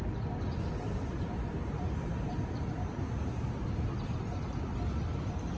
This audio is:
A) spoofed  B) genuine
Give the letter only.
B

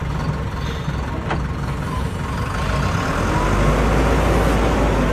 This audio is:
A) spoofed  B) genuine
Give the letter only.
B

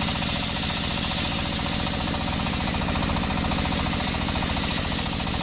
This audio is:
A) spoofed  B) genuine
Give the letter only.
A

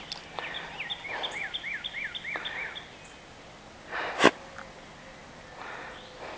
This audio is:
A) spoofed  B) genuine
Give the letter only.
B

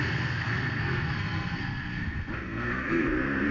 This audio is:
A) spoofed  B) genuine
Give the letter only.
A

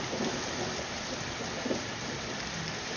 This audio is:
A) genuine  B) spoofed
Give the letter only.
B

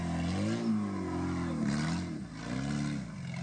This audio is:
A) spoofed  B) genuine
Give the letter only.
B